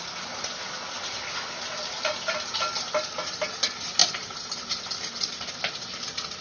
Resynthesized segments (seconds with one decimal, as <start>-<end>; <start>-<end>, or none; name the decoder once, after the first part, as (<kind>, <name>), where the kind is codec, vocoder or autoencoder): none